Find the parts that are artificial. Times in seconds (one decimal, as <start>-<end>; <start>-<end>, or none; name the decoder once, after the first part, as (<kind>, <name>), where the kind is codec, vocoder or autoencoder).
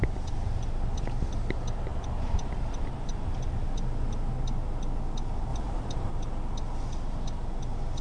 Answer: 1.9-3.3 (vocoder, BigVGAN v2); 5.5-6.1